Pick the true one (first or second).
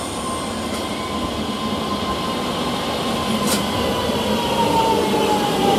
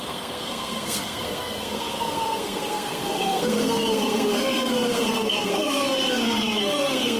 first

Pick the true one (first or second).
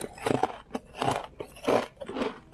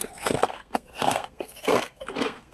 first